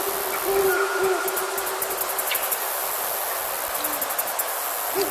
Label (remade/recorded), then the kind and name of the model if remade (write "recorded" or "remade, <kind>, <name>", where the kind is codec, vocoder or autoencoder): recorded